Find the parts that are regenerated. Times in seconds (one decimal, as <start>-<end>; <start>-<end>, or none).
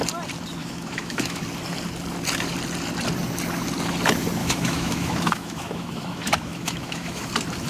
0.6-1.4; 4.4-7.2